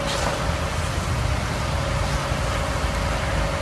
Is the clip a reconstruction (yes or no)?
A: no